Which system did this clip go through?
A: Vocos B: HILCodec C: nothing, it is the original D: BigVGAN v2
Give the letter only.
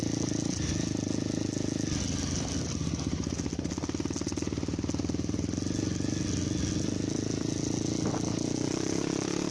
C